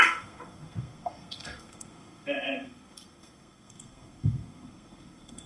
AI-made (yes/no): yes